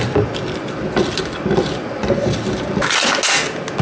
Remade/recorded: recorded